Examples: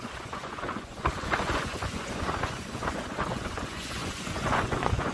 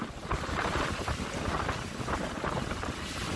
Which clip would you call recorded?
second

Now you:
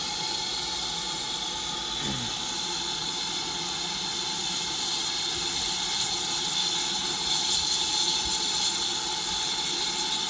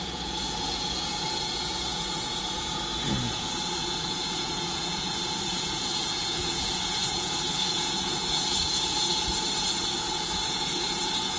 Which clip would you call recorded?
first